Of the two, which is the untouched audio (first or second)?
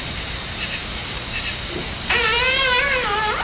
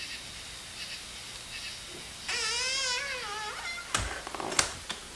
second